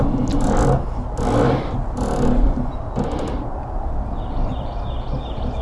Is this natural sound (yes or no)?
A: yes